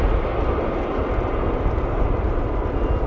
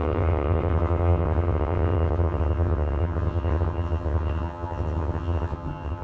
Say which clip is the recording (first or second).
first